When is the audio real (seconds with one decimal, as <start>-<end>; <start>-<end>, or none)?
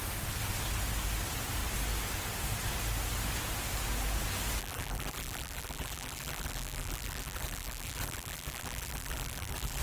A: 0.0-4.6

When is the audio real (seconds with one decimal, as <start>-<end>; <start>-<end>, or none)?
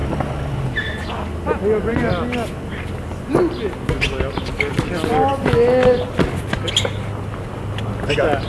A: 0.0-8.5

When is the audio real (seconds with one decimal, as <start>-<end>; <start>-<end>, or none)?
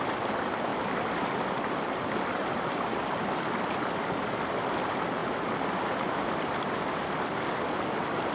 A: 0.0-0.7; 1.7-2.4; 4.4-8.3